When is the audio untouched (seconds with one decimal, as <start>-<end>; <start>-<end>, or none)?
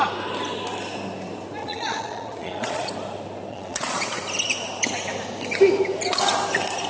0.0-1.6; 2.9-3.5; 4.2-6.9